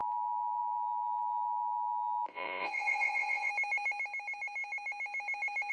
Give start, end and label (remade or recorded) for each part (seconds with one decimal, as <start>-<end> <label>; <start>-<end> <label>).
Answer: 0.0-2.3 recorded; 2.3-3.5 remade; 3.5-5.7 recorded